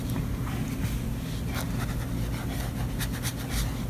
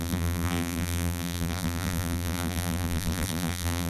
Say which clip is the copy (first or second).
second